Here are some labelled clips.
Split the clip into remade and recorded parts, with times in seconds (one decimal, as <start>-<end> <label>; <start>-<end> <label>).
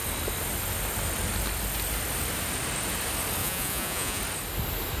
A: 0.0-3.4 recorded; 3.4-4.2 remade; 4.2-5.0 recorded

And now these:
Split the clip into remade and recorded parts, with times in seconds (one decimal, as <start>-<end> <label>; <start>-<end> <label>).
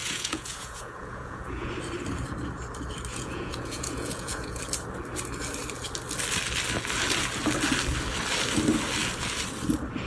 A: 0.0-1.7 remade; 1.7-3.1 recorded; 3.1-4.6 remade; 4.6-10.1 recorded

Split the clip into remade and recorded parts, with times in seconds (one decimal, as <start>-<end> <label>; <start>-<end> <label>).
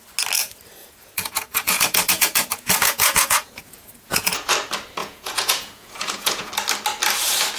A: 0.0-0.8 recorded; 0.8-4.5 remade; 4.5-5.0 recorded; 5.0-6.5 remade; 6.5-7.6 recorded